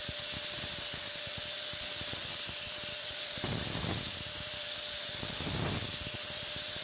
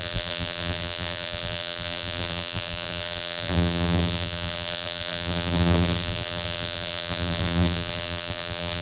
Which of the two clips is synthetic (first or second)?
second